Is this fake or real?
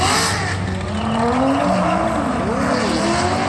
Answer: real